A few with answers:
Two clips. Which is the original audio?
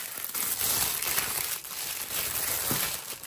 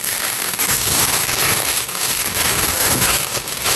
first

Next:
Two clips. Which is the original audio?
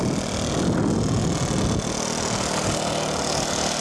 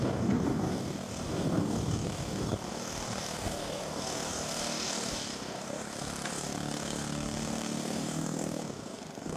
first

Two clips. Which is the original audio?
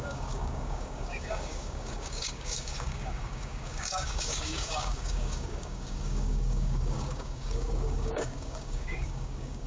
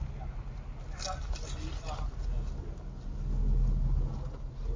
second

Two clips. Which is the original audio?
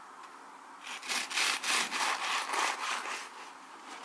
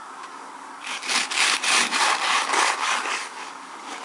first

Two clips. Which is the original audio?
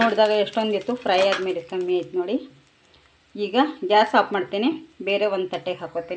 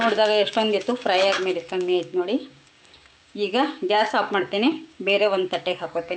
first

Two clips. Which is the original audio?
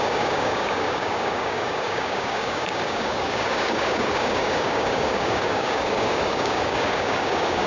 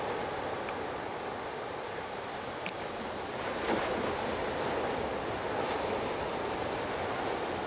second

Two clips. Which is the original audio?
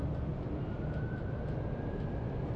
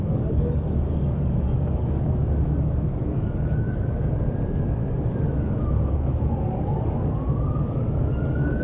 first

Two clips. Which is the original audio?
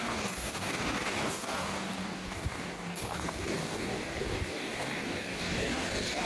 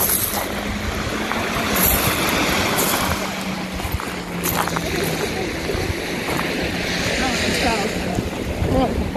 second